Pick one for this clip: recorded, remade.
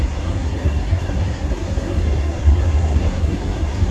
remade